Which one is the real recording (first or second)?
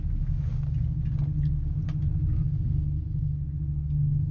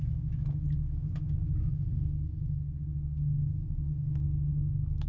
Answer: first